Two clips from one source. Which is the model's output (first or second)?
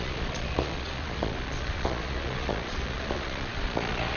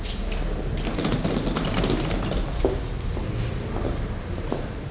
first